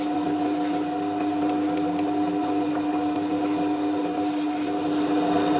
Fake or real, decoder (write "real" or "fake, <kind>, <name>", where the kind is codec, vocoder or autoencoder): real